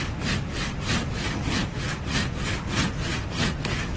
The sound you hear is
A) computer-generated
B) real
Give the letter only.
B